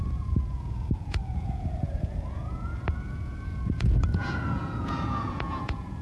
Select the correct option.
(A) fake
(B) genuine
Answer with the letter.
A